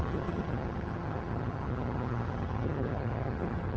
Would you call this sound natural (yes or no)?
no